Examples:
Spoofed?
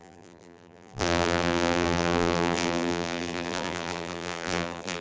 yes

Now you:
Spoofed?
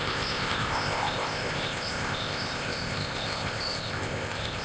yes